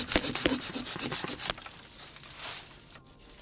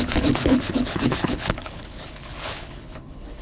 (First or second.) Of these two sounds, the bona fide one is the first